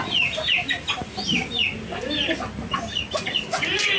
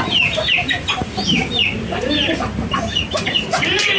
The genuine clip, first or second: first